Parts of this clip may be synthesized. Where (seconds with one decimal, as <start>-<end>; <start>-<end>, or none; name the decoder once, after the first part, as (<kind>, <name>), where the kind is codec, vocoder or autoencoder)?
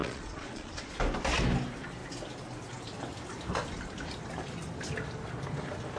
0.0-0.9 (vocoder, Vocos)